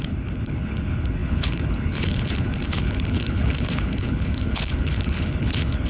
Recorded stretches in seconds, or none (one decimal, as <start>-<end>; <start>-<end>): none